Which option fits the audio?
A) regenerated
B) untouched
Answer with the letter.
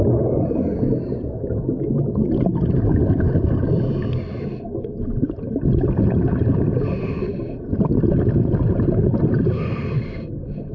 B